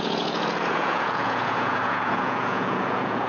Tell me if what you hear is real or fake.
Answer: fake